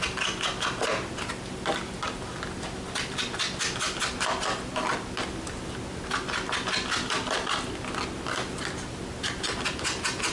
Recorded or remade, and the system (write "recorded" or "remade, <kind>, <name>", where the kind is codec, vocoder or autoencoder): recorded